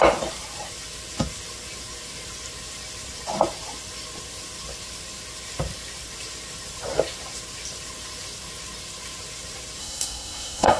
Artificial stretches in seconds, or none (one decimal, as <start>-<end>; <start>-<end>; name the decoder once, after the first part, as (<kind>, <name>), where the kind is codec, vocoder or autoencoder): 9.8-10.8 (codec, SNAC)